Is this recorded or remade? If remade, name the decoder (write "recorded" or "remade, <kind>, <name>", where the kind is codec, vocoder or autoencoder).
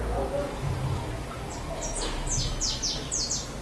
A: recorded